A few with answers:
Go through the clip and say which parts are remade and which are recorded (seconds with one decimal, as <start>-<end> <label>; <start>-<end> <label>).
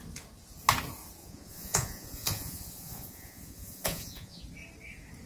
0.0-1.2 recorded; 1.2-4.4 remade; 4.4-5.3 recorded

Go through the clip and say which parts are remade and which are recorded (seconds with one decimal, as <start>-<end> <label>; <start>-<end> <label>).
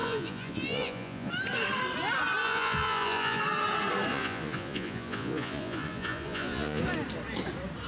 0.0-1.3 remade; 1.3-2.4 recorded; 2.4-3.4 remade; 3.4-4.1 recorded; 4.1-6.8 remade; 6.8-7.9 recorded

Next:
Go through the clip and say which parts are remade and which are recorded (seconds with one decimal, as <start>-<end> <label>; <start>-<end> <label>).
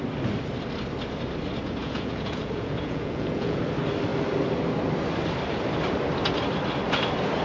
0.0-1.8 recorded; 1.8-3.6 remade; 3.6-7.4 recorded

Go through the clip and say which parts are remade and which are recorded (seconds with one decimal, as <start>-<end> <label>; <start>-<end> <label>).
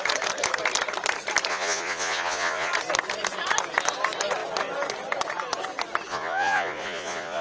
0.0-1.5 recorded; 1.5-2.7 remade; 2.7-6.1 recorded; 6.1-7.4 remade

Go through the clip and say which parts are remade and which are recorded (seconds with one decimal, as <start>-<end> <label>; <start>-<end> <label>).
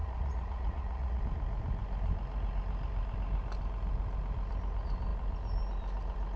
0.0-1.2 remade; 1.2-6.4 recorded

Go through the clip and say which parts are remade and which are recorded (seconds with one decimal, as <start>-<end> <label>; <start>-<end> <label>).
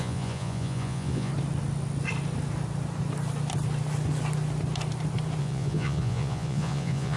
0.0-1.3 remade; 1.3-5.4 recorded; 5.4-7.2 remade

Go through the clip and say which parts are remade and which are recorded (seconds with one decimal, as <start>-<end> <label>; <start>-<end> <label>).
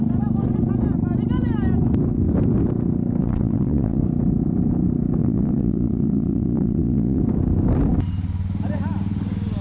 0.0-3.2 recorded; 3.2-4.0 remade; 4.0-5.2 recorded; 5.2-7.2 remade; 7.2-9.6 recorded